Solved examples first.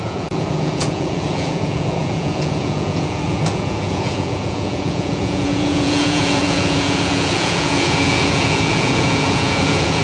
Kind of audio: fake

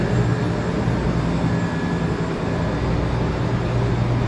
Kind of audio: real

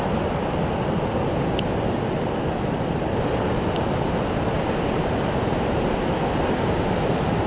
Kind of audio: real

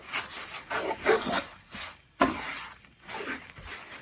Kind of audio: real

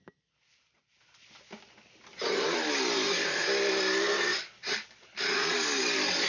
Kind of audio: real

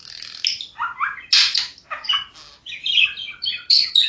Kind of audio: real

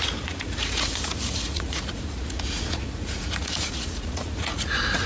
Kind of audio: fake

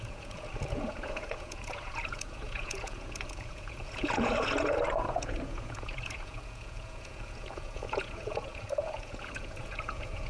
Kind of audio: fake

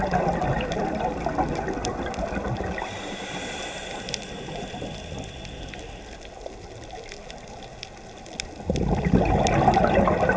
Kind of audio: real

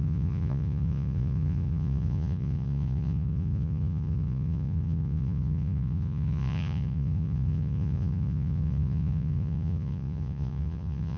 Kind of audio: fake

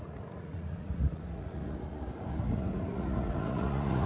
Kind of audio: fake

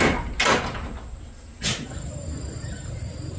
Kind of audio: real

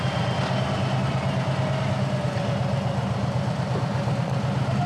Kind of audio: real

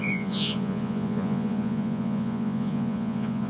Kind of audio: fake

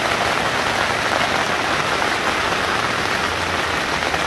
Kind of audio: real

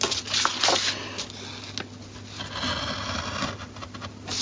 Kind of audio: real